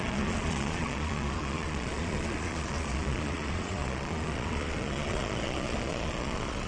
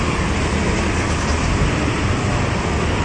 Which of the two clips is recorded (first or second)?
second